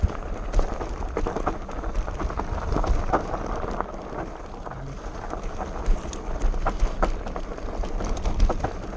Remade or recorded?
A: recorded